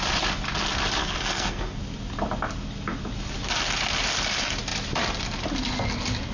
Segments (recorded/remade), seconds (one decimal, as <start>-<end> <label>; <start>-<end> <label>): 0.0-1.0 recorded; 1.0-1.8 remade; 1.8-6.3 recorded